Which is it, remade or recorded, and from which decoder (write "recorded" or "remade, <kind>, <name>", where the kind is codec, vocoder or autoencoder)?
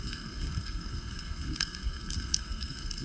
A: remade, codec, SNAC